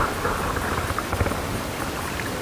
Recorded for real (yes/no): yes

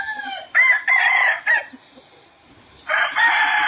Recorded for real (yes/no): no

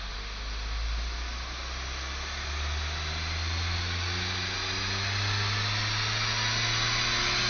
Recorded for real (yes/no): yes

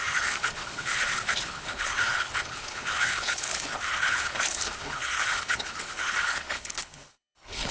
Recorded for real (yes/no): no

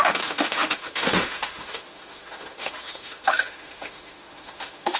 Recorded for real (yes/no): no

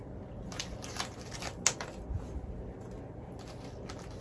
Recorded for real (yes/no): yes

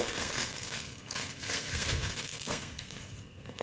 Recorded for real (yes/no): no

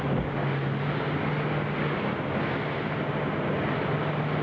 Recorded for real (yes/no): yes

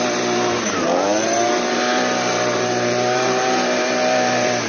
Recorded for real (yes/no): no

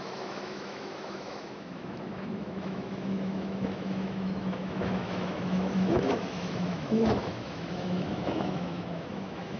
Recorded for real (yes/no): no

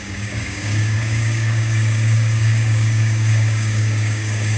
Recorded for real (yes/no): no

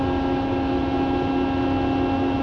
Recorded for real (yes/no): yes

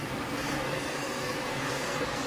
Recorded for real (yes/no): no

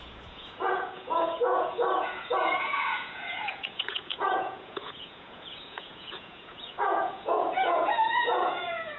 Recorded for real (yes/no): no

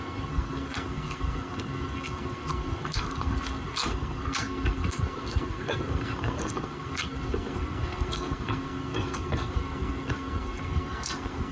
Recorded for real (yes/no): no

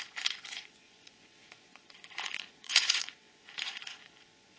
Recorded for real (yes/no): no